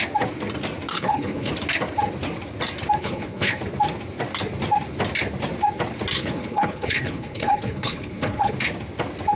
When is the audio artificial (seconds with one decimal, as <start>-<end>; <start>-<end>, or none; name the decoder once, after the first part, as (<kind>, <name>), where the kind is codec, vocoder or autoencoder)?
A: 0.9-1.5 (codec, HILCodec); 3.0-3.6; 6.1-8.5